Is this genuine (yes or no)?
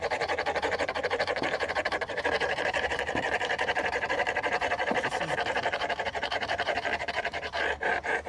no